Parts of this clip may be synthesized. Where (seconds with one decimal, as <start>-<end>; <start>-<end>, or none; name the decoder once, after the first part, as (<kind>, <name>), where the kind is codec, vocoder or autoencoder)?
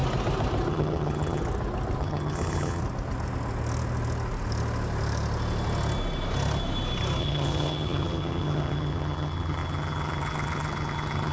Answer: 0.7-1.4 (vocoder, HiFi-GAN); 2.0-2.8; 7.2-11.3